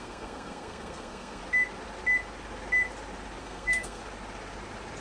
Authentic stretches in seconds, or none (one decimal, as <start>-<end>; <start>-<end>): 1.4-3.4; 4.0-5.0